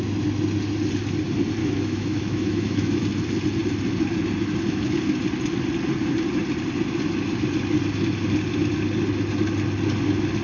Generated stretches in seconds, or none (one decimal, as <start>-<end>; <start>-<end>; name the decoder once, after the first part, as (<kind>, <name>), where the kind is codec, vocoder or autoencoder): 1.6-3.0 (autoencoder, DAC-VAE)